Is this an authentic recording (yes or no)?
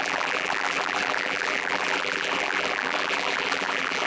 no